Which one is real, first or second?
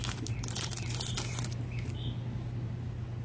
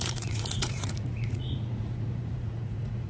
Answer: first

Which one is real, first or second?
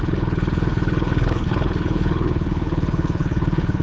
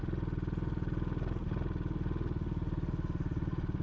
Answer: second